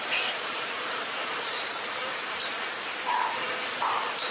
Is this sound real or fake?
fake